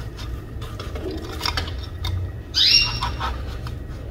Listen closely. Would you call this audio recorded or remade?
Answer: recorded